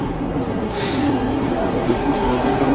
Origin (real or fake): fake